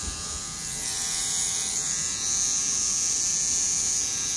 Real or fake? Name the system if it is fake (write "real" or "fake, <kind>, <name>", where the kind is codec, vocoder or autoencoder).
fake, vocoder, Vocos